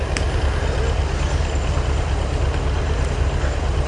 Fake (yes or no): no